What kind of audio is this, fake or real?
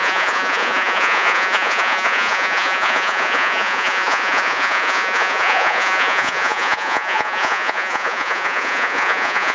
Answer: fake